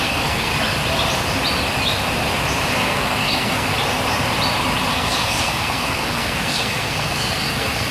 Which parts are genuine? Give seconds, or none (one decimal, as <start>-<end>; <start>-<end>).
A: 0.5-2.7; 3.7-4.9